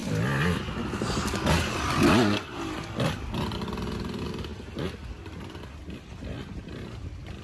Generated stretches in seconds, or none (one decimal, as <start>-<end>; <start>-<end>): none